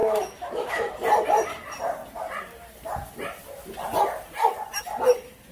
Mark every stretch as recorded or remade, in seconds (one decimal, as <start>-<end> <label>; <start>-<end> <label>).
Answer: 0.0-0.9 remade; 0.9-5.5 recorded